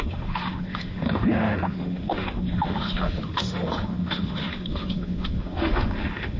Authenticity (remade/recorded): remade